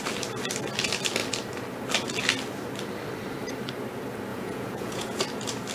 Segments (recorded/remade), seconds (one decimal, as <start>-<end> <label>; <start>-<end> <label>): 0.0-4.3 recorded; 4.3-5.2 remade; 5.2-5.7 recorded